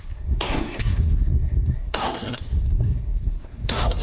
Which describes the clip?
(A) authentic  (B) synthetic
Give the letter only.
B